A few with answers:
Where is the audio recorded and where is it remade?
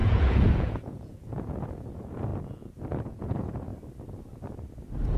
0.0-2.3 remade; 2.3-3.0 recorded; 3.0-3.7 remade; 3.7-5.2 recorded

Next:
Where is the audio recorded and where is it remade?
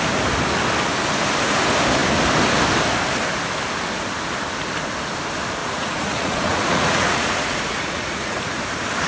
0.0-5.6 recorded; 5.6-8.6 remade; 8.6-9.1 recorded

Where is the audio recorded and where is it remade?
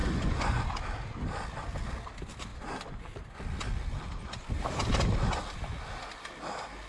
0.0-0.6 remade; 0.6-6.9 recorded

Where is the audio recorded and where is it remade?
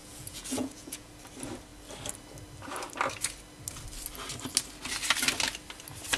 0.0-1.1 remade; 1.1-6.2 recorded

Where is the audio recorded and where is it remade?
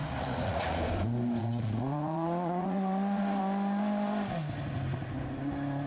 0.0-0.8 remade; 0.8-1.4 recorded; 1.4-3.4 remade; 3.4-5.9 recorded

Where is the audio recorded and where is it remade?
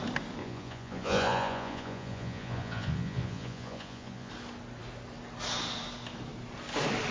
0.0-0.4 recorded; 0.4-4.3 remade; 4.3-7.1 recorded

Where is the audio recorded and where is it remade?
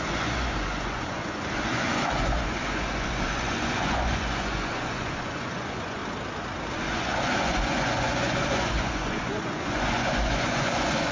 0.0-6.0 remade; 6.0-6.7 recorded; 6.7-11.1 remade